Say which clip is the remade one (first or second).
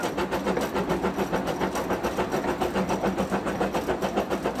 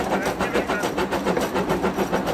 second